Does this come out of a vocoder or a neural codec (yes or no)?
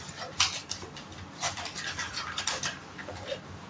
no